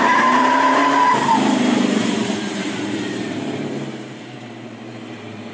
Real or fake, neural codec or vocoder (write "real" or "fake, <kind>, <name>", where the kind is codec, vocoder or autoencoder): fake, vocoder, BigVGAN v2